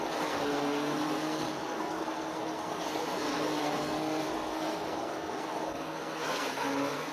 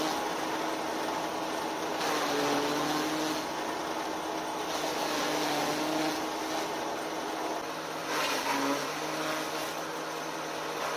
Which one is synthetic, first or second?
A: first